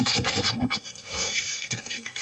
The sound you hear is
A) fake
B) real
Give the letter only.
A